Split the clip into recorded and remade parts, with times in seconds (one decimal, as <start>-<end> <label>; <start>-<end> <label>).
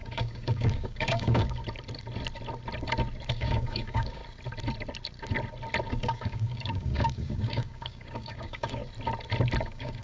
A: 0.0-1.6 remade; 1.6-3.3 recorded; 3.3-4.2 remade; 4.2-5.9 recorded; 5.9-8.8 remade; 8.8-9.6 recorded; 9.6-10.0 remade